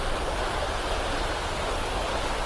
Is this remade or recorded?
recorded